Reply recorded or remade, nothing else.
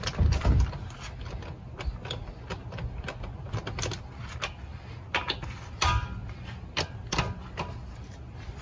recorded